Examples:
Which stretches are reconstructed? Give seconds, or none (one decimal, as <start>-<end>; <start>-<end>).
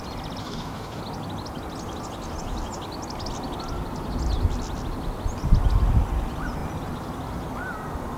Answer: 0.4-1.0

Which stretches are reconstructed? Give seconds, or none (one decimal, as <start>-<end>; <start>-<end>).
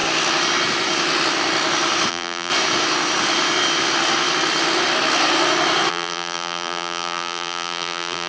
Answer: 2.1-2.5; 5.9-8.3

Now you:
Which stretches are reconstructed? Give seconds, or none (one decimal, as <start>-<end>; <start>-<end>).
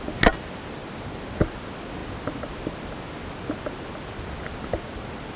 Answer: none